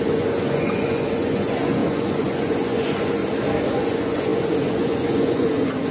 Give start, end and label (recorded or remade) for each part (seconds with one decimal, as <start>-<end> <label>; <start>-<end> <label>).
0.0-3.2 remade; 3.2-3.7 recorded; 3.7-5.9 remade